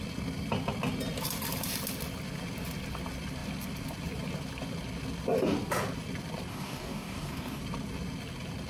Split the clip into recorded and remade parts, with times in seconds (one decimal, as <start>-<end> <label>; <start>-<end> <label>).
0.0-6.5 recorded; 6.5-7.6 remade; 7.6-8.7 recorded